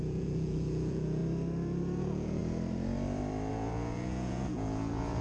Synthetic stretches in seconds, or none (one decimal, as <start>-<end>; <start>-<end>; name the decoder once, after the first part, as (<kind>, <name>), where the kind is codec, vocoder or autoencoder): 0.0-1.2 (vocoder, Vocos); 2.0-2.4; 3.5-5.2